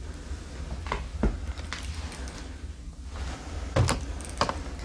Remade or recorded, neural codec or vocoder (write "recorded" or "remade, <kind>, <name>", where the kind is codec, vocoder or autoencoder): recorded